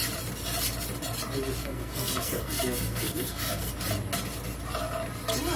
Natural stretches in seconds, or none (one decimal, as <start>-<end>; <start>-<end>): 0.0-1.6; 3.7-5.6